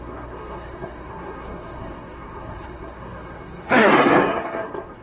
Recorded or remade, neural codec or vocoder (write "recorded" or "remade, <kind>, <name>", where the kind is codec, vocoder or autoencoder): remade, codec, SNAC